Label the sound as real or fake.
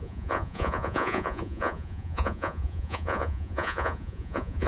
fake